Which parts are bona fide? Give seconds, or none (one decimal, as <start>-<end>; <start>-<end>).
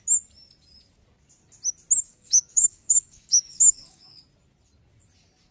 0.0-2.1; 4.2-5.5